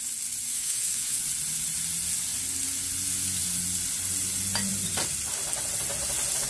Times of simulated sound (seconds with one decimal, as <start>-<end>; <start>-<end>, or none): 0.5-1.2